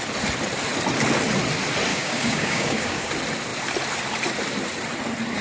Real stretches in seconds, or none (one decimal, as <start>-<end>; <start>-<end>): 0.0-1.9; 3.1-5.4